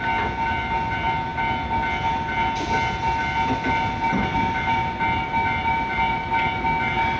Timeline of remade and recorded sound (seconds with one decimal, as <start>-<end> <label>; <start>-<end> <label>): 0.0-7.2 recorded

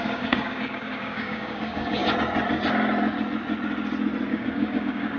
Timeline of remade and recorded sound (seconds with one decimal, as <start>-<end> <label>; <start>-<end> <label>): 0.0-2.0 remade; 2.0-4.3 recorded; 4.3-5.2 remade